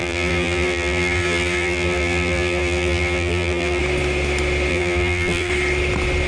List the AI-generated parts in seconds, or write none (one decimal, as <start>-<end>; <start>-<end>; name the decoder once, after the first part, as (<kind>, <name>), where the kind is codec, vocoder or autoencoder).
0.0-3.8 (vocoder, BigVGAN v2); 4.7-5.5